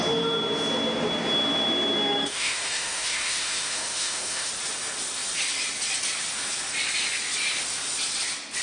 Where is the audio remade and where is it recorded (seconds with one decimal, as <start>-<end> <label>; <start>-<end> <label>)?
0.0-2.2 recorded; 2.2-4.5 remade; 4.5-8.6 recorded